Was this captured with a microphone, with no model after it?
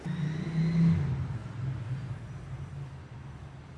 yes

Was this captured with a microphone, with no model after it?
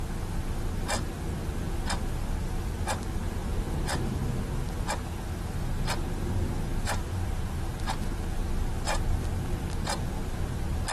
yes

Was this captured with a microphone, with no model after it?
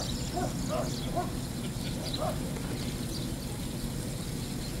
yes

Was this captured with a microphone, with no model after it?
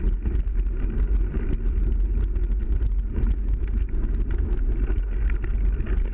yes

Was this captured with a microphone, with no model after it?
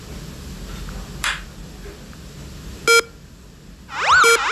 yes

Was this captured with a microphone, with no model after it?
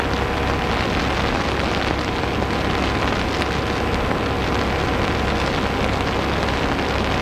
yes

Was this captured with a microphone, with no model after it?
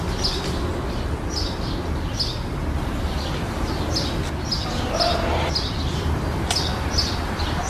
yes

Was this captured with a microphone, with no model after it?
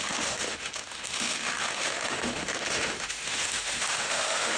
no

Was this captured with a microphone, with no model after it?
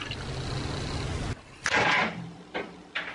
yes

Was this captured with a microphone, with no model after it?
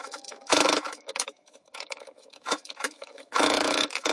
no